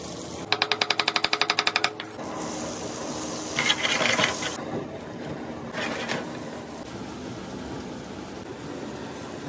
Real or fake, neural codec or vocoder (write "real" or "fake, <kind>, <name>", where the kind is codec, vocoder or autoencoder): real